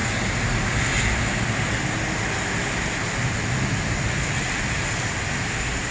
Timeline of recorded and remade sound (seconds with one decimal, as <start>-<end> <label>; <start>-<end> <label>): 0.0-5.9 recorded

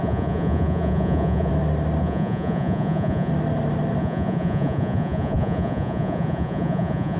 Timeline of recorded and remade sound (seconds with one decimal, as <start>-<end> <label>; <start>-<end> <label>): 0.0-1.5 remade; 1.5-2.0 recorded; 2.0-3.3 remade; 3.3-4.0 recorded; 4.0-7.2 remade

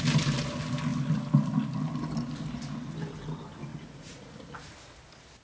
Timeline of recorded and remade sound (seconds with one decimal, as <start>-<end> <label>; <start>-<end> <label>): 0.0-3.7 recorded; 3.7-4.3 remade; 4.3-5.4 recorded

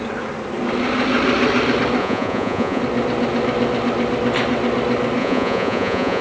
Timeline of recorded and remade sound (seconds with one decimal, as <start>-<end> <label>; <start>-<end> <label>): 0.0-2.0 recorded; 2.0-2.8 remade; 2.8-5.2 recorded; 5.2-6.2 remade

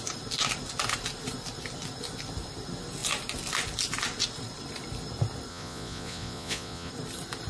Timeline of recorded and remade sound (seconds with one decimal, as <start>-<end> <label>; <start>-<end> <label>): 0.0-5.5 recorded; 5.5-6.9 remade; 6.9-7.5 recorded